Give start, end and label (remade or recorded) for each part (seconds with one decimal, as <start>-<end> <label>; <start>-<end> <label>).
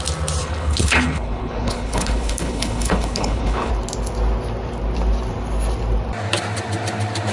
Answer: 0.0-0.4 recorded; 0.4-3.7 remade; 3.7-7.3 recorded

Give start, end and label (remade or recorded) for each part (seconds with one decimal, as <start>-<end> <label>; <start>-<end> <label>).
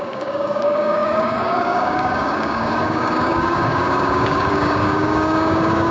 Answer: 0.0-5.9 remade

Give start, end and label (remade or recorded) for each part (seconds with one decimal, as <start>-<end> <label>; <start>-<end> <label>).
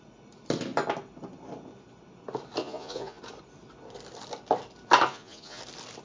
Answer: 0.0-2.6 recorded; 2.6-3.2 remade; 3.2-5.1 recorded; 5.1-5.6 remade; 5.6-6.0 recorded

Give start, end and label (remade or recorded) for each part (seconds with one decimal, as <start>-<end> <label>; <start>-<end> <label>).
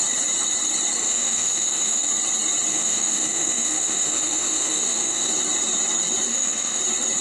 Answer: 0.0-1.0 recorded; 1.0-2.1 remade; 2.1-2.7 recorded; 2.7-5.3 remade; 5.3-6.3 recorded; 6.3-6.8 remade; 6.8-7.2 recorded